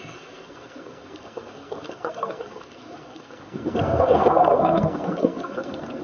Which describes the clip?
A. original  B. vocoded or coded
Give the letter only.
B